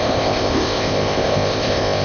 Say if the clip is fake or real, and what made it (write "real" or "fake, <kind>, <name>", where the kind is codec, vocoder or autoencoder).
fake, codec, ZipCodec